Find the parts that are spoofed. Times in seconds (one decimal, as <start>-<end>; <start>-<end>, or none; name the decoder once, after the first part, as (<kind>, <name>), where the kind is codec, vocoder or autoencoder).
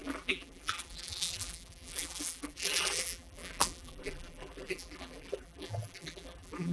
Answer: 0.0-6.7 (vocoder, BigVGAN v2)